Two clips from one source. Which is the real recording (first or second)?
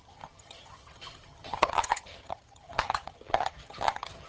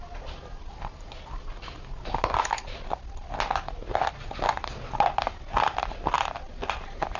second